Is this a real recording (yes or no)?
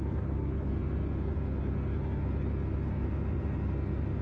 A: yes